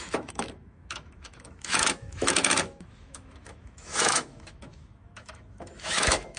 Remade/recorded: remade